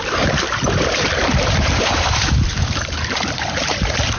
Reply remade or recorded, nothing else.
remade